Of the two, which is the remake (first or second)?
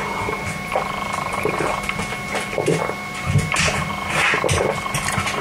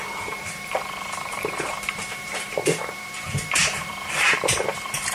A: second